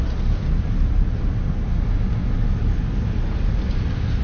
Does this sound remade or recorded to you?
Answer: recorded